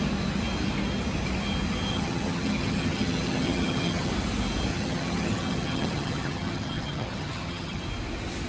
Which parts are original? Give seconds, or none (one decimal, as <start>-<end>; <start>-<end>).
0.0-1.9; 4.1-4.7; 7.8-8.5